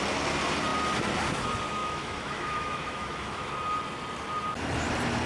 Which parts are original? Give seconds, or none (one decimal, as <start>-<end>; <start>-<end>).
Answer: 0.0-1.8; 3.5-5.3